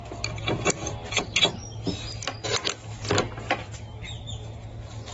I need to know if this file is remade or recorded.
recorded